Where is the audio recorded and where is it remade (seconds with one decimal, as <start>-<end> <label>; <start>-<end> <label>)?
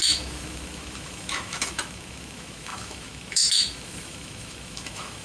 0.0-5.2 remade